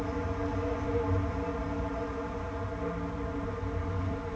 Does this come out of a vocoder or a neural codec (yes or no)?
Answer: no